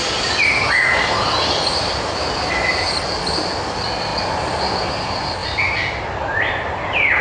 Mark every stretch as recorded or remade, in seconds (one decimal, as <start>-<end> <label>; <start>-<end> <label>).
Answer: 0.0-2.9 remade; 2.9-5.4 recorded; 5.4-7.2 remade